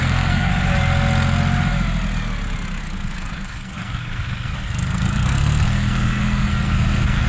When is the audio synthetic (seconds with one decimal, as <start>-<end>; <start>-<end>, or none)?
0.0-0.5; 2.8-7.3